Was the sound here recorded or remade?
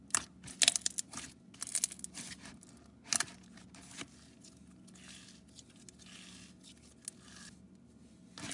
recorded